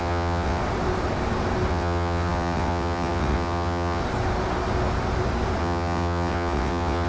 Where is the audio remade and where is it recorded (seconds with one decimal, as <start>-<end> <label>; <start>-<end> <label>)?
0.0-0.6 remade; 0.6-1.7 recorded; 1.7-4.0 remade; 4.0-5.6 recorded; 5.6-7.1 remade